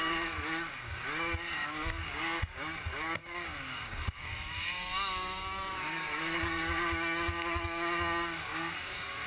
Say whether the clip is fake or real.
fake